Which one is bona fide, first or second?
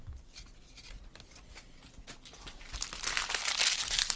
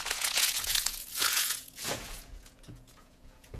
first